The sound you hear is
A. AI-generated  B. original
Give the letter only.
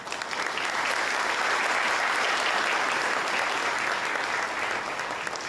B